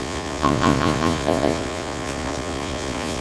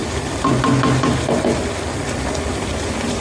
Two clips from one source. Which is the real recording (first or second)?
second